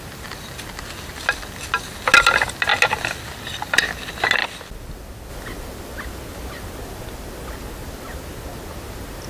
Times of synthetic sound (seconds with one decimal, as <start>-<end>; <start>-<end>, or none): none